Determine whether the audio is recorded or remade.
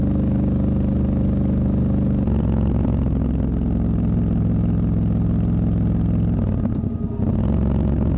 recorded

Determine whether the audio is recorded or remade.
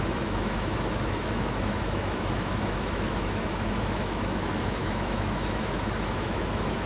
remade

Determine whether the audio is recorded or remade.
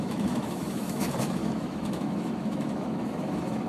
remade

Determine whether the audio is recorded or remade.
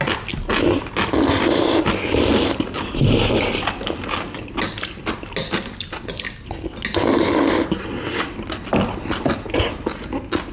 recorded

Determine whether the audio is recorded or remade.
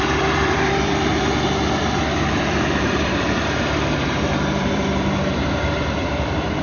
remade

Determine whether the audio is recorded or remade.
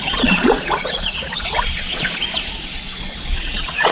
remade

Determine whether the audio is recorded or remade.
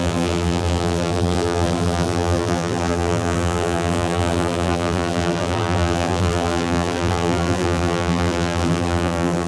remade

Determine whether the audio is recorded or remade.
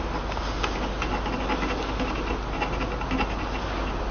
recorded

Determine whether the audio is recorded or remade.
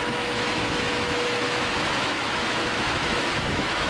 remade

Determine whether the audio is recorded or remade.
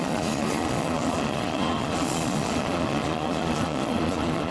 remade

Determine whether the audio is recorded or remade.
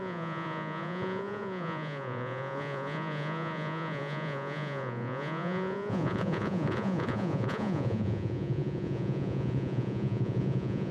remade